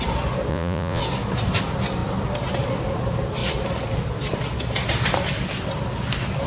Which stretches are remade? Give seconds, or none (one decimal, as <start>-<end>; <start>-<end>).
0.5-1.0